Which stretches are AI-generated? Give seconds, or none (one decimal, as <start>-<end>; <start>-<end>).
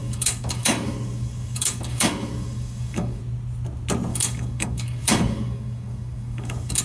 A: 0.0-3.2; 4.1-6.8